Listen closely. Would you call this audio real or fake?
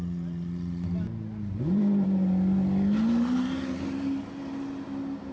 real